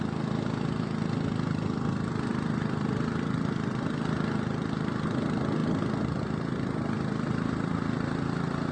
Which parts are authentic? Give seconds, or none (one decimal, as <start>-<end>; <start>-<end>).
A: 0.0-8.7